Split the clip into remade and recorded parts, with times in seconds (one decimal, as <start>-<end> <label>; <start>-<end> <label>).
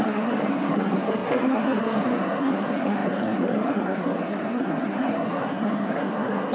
0.0-6.5 remade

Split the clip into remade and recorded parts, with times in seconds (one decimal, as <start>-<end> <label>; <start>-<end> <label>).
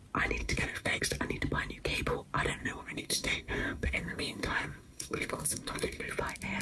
0.0-0.4 recorded; 0.4-1.0 remade; 1.0-2.6 recorded; 2.6-6.1 remade; 6.1-6.6 recorded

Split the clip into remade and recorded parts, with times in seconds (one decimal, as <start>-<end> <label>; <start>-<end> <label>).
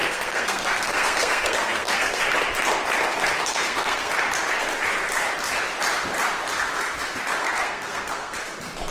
0.0-2.2 remade; 2.2-3.5 recorded; 3.5-4.1 remade; 4.1-7.4 recorded; 7.4-8.4 remade; 8.4-8.9 recorded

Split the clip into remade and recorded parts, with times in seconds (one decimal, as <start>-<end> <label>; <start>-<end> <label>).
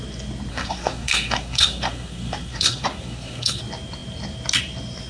0.0-0.5 recorded; 0.5-3.6 remade; 3.6-5.1 recorded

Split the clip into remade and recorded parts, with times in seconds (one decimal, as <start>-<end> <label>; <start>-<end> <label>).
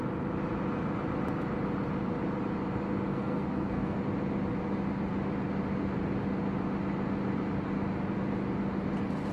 0.0-3.1 recorded; 3.1-4.0 remade; 4.0-9.3 recorded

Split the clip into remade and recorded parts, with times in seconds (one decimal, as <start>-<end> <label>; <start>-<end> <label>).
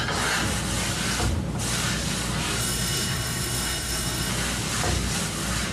0.0-2.6 recorded; 2.6-4.3 remade; 4.3-5.7 recorded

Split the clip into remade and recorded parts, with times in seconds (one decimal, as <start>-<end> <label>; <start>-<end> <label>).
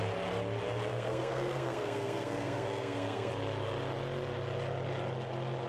0.0-0.9 recorded; 0.9-3.3 remade; 3.3-5.7 recorded